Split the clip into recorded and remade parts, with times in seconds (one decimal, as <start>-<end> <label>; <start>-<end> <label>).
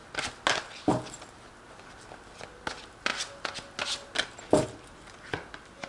0.0-5.9 recorded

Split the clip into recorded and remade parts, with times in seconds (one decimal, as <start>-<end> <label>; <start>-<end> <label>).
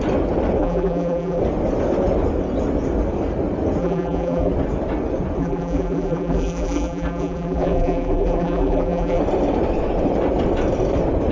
0.0-0.6 recorded; 0.6-1.4 remade; 1.4-3.8 recorded; 3.8-4.5 remade; 4.5-5.4 recorded; 5.4-9.2 remade; 9.2-11.3 recorded